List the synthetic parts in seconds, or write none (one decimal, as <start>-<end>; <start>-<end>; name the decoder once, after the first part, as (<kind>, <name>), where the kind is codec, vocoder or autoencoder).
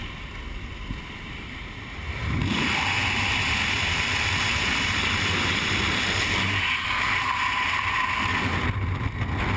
none